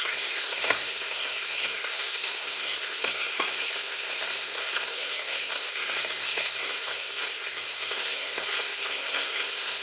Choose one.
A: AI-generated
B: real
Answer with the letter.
A